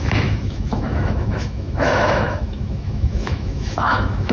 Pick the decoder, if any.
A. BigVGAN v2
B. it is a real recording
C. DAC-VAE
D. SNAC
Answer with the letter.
C